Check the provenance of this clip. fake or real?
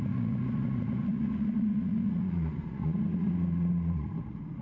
fake